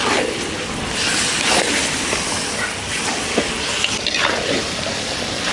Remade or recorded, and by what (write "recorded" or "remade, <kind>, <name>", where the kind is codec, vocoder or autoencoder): recorded